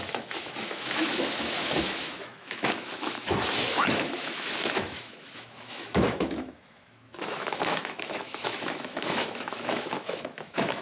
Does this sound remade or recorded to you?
remade